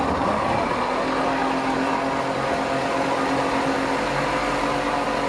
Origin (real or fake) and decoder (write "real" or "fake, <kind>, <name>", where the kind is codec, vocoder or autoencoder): real